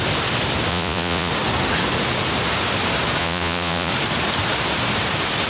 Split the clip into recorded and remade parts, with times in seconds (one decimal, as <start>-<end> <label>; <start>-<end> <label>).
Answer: 0.0-0.7 recorded; 0.7-1.3 remade; 1.3-3.2 recorded; 3.2-3.9 remade; 3.9-5.5 recorded